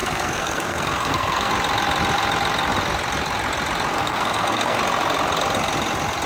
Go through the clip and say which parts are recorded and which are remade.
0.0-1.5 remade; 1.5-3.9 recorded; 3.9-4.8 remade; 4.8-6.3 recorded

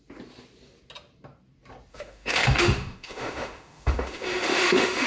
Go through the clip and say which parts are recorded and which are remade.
0.0-1.9 recorded; 1.9-5.1 remade

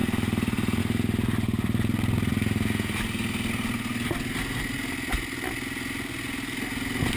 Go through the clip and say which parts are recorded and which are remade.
0.0-7.2 recorded

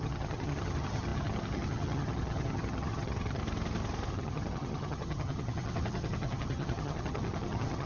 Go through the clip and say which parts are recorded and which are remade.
0.0-3.4 remade; 3.4-4.1 recorded; 4.1-7.9 remade

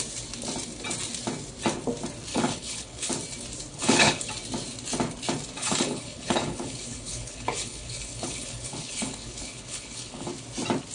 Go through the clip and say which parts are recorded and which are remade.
0.0-2.3 recorded; 2.3-3.1 remade; 3.1-3.7 recorded; 3.7-4.3 remade; 4.3-5.6 recorded; 5.6-10.3 remade; 10.3-10.9 recorded